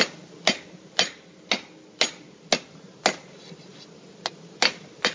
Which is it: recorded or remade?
recorded